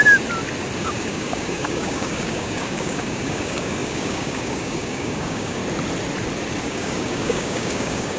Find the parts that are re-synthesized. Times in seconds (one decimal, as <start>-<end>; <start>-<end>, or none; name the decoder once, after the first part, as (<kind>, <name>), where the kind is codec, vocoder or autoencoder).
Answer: 0.8-5.6 (codec, DAC); 6.6-8.2

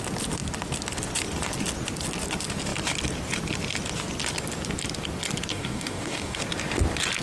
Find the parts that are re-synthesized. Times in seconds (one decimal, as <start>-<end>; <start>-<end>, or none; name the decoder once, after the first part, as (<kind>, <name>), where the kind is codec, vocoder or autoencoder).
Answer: 5.5-6.4 (codec, DAC)

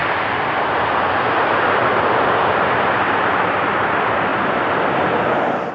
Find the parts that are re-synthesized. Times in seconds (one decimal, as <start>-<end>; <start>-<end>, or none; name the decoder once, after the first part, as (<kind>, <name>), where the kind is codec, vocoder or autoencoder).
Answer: none

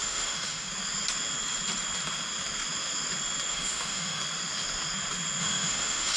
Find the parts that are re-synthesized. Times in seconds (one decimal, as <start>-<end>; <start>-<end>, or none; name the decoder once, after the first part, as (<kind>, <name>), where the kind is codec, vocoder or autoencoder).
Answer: 0.0-0.7 (autoencoder, DAC-VAE); 3.5-4.2; 5.4-6.2

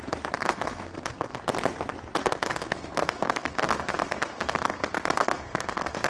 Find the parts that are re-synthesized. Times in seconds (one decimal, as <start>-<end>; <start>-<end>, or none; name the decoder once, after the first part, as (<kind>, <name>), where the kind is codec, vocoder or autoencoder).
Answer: 0.4-1.4 (codec, SNAC); 2.2-6.1

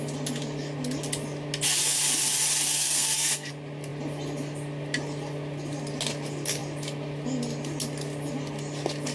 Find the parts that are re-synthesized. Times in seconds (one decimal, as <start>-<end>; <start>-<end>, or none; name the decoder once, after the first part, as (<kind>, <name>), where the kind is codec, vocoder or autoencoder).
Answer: 2.7-3.5 (codec, SNAC)

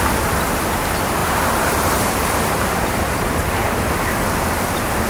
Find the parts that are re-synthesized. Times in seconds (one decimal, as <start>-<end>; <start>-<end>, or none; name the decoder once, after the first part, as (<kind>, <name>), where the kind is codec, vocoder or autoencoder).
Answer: 1.2-4.3 (vocoder, BigVGAN v2)

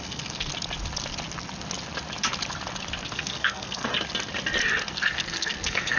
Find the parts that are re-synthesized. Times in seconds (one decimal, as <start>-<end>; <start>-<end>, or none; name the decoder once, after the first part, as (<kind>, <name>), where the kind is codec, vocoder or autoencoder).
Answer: 0.0-0.5 (codec, SNAC); 3.1-3.9; 4.9-6.0